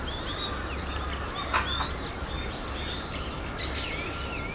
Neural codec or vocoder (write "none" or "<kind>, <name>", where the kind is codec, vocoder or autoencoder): none